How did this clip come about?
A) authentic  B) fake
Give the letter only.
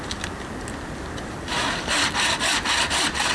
A